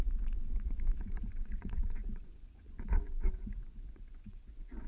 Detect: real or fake fake